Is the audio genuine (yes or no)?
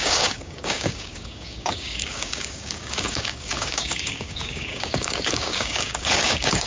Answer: no